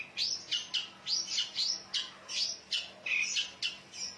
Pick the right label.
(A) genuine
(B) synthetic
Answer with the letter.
A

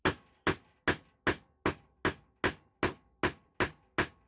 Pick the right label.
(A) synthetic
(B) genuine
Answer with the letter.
B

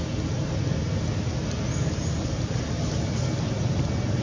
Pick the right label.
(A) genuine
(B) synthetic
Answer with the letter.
A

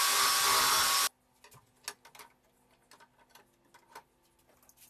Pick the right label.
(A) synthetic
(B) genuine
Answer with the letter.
B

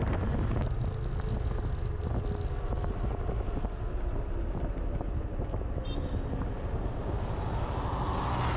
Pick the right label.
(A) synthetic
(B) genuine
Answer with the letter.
B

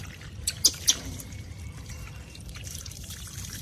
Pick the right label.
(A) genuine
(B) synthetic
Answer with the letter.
B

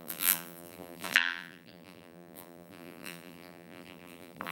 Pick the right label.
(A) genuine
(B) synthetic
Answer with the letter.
B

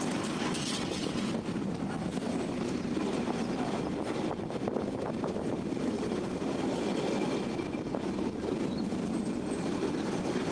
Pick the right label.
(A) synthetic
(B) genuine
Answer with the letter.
B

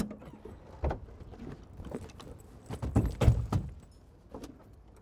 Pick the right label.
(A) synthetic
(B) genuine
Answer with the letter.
B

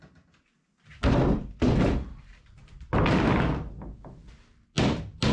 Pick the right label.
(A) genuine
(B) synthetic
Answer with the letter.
A